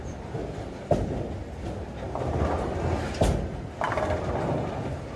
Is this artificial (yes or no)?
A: no